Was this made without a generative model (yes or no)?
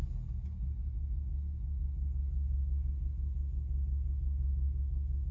yes